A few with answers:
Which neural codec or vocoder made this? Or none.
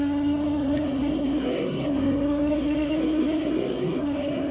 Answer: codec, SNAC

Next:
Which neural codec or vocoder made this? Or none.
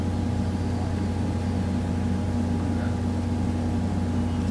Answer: none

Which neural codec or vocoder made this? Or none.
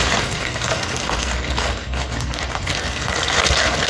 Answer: codec, SNAC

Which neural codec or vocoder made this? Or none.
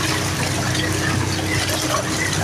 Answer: none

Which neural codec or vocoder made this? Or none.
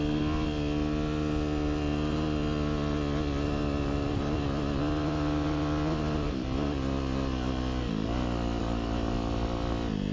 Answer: none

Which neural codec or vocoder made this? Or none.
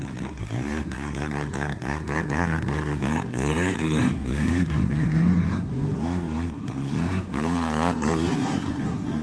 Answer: codec, SNAC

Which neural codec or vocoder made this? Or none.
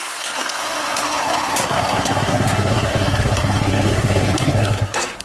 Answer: codec, SNAC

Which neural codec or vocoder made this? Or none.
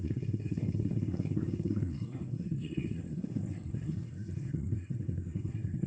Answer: codec, SNAC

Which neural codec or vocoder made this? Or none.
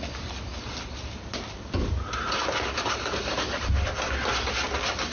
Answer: none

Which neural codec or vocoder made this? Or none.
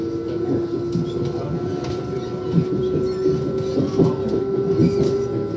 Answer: none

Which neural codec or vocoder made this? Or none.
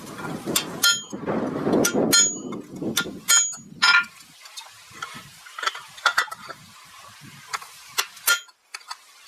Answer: none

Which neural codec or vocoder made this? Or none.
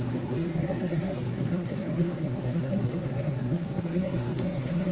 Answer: codec, SNAC